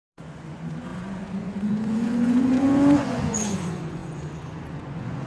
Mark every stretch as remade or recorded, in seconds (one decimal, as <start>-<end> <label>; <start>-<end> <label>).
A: 0.0-5.3 remade